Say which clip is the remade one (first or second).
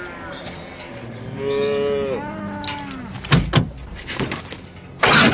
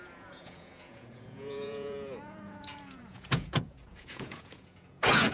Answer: second